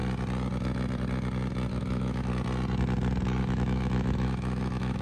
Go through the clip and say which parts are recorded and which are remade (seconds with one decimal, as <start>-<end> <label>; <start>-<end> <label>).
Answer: 0.0-1.7 recorded; 1.7-2.3 remade; 2.3-3.4 recorded; 3.4-5.0 remade